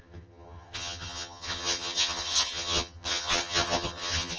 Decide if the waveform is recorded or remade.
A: remade